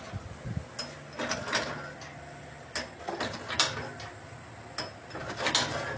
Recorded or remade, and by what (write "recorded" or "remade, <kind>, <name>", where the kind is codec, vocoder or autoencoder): recorded